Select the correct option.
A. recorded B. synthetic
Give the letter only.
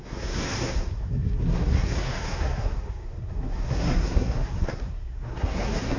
B